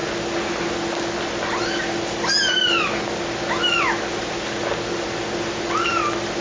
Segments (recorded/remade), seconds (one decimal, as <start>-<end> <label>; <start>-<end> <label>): 0.0-6.4 recorded